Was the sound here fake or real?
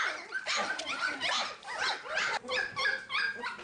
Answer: fake